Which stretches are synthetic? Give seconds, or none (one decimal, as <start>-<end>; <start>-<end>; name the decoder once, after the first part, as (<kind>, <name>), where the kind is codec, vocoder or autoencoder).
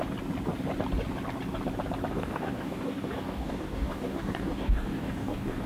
2.1-5.7 (codec, DAC)